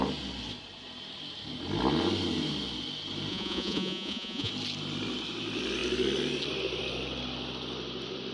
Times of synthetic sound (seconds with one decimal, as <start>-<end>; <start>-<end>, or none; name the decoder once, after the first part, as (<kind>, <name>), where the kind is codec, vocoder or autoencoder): 3.3-4.5 (vocoder, Vocos)